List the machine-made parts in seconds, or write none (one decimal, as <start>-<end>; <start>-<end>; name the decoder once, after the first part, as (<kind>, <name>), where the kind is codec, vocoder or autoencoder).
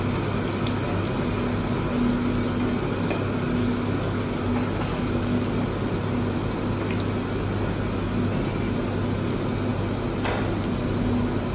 3.6-4.5 (codec, DAC); 4.9-5.5